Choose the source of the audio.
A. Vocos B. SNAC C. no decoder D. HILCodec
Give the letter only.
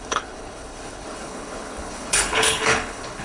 D